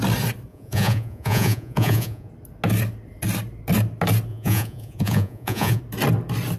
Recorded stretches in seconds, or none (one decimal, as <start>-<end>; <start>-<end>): 0.0-0.5; 2.3-4.3; 5.8-6.6